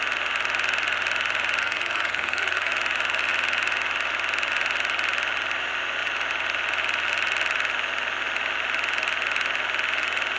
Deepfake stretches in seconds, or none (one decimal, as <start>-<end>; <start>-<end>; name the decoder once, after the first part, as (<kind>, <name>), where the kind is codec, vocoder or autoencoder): 1.6-2.7 (codec, SNAC)